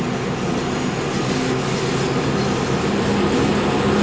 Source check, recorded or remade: recorded